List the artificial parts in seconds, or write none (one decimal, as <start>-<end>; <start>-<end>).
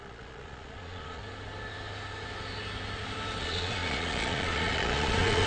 0.0-1.2; 3.4-5.5